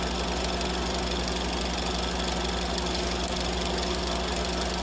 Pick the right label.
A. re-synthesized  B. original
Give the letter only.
B